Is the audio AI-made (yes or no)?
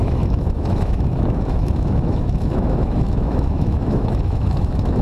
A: yes